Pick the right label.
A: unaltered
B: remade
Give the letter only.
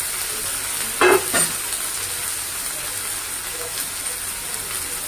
A